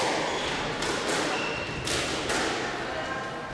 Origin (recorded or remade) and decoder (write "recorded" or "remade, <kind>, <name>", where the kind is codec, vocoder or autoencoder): recorded